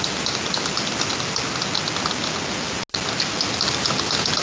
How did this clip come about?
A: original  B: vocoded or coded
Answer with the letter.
A